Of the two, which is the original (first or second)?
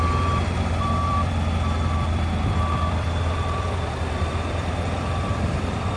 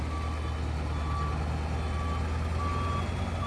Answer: second